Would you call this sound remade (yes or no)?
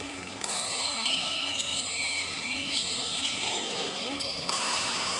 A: yes